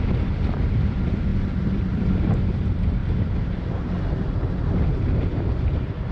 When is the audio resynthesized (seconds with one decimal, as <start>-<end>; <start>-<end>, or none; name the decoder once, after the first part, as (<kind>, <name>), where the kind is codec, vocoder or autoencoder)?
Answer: 0.0-3.0 (vocoder, BigVGAN v2); 4.6-6.1